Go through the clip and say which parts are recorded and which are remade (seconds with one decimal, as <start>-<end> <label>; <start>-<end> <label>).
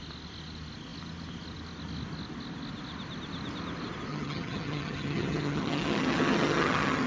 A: 0.0-4.1 recorded; 4.1-7.1 remade